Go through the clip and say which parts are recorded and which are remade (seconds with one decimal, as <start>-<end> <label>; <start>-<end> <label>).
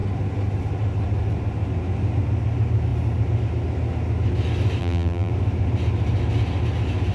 0.0-4.8 recorded; 4.8-5.3 remade; 5.3-7.1 recorded